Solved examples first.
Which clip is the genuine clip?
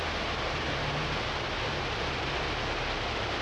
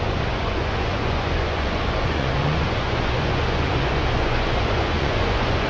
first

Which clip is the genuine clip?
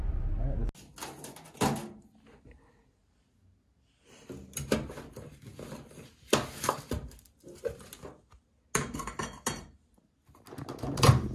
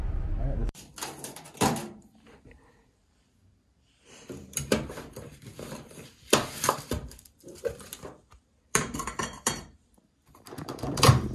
first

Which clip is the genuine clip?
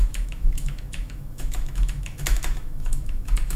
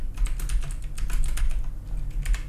second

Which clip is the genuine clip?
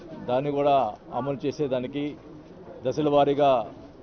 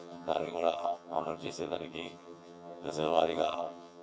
first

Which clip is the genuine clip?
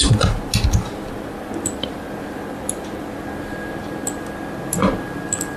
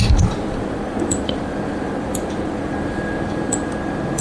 first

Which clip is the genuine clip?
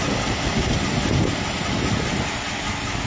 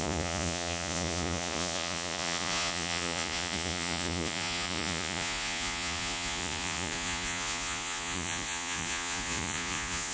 first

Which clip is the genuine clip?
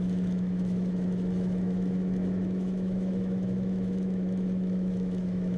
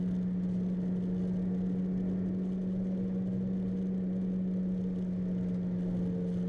second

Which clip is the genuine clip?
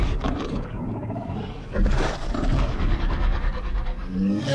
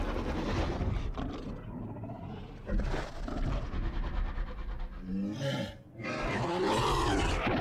second